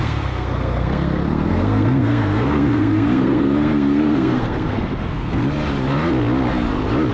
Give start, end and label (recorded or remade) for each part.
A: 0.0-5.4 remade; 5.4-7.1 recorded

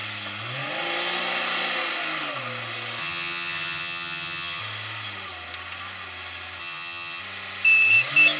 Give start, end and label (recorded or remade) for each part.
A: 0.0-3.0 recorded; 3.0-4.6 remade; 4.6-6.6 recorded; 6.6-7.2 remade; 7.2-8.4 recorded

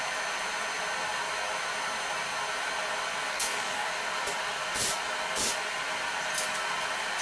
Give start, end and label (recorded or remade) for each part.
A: 0.0-3.3 recorded; 3.3-3.9 remade; 3.9-7.2 recorded

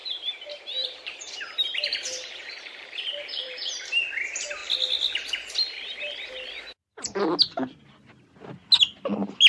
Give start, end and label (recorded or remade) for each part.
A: 0.0-3.9 remade; 3.9-9.5 recorded

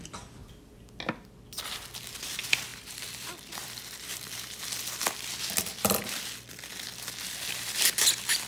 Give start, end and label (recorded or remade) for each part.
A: 0.0-2.7 recorded; 2.7-6.0 remade; 6.0-8.5 recorded

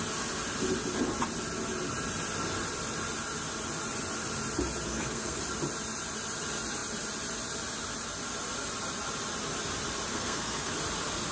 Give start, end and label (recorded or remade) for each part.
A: 0.0-4.9 recorded; 4.9-5.4 remade; 5.4-10.1 recorded; 10.1-10.7 remade; 10.7-11.3 recorded

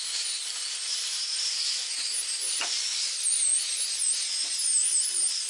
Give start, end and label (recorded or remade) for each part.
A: 0.0-5.5 recorded

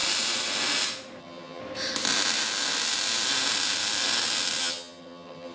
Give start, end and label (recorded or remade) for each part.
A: 0.0-1.2 recorded; 1.2-1.6 remade; 1.6-4.6 recorded; 4.6-5.5 remade